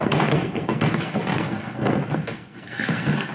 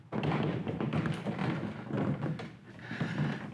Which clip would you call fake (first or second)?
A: first